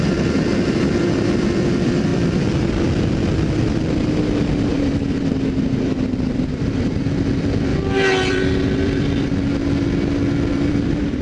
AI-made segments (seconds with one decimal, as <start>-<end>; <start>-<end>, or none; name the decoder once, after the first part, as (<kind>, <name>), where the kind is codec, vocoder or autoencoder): 0.0-7.7 (vocoder, BigVGAN v2); 8.3-9.6; 10.5-11.2